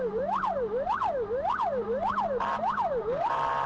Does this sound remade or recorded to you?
remade